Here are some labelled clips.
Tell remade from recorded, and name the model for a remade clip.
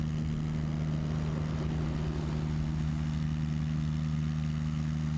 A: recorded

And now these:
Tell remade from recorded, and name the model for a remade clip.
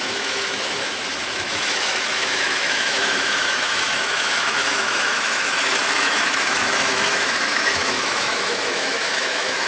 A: remade, autoencoder, DAC-VAE